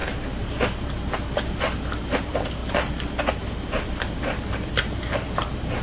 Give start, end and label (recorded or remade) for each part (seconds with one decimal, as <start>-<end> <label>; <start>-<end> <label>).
0.0-2.6 remade; 2.6-3.3 recorded; 3.3-5.8 remade